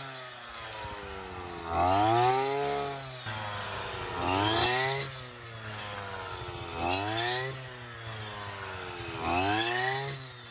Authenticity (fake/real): real